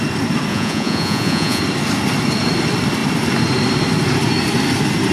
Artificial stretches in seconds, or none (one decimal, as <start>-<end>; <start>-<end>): 0.5-1.6